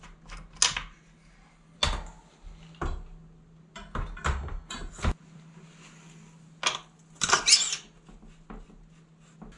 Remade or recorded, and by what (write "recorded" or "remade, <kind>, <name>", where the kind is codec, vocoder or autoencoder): recorded